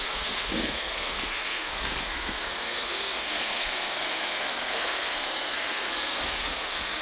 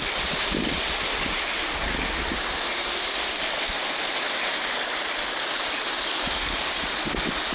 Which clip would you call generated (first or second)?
first